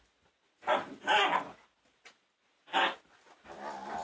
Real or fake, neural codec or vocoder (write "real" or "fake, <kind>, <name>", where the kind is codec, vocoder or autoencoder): real